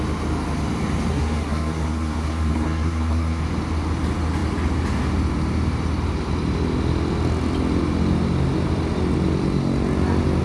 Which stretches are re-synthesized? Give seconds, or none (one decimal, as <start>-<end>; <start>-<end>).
1.1-3.4